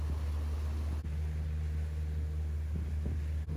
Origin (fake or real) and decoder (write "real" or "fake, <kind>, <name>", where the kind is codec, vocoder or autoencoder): real